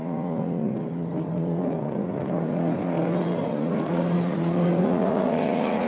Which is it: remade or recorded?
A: remade